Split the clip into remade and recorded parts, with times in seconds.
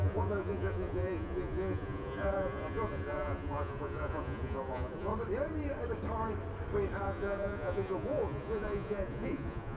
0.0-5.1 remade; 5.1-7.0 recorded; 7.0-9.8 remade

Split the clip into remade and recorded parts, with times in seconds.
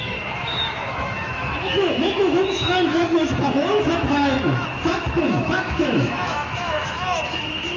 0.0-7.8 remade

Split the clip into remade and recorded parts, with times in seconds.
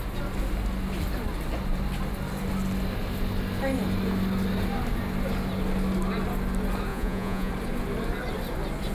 0.0-6.9 recorded; 6.9-7.5 remade; 7.5-8.9 recorded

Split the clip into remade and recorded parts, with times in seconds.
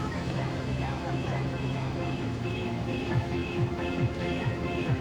0.0-5.0 remade